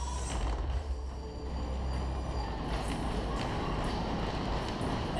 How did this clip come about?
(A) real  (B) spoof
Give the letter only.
A